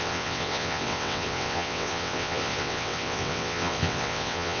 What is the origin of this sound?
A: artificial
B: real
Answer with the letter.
A